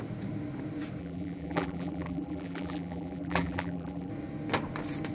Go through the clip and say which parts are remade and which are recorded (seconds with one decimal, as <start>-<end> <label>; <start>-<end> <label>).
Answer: 0.0-1.0 recorded; 1.0-4.1 remade; 4.1-5.1 recorded